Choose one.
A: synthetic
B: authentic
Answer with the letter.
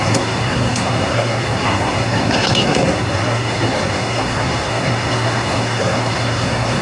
A